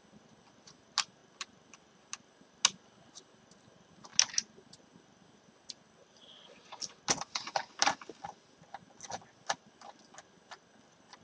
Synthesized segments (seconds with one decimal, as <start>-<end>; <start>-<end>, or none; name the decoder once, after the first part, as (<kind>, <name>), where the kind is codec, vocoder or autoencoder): none

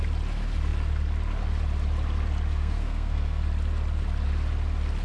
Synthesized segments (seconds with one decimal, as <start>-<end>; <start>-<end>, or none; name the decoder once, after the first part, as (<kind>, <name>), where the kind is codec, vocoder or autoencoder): 2.6-3.4 (codec, SNAC)